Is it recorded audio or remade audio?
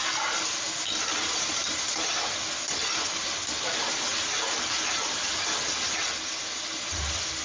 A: recorded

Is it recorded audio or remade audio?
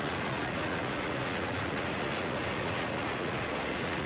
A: remade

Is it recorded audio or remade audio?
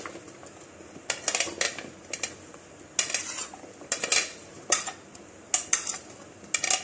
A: recorded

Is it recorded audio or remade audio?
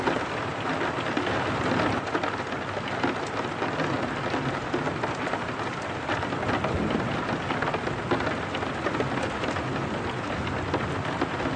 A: recorded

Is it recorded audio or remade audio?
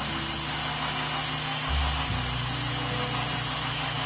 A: recorded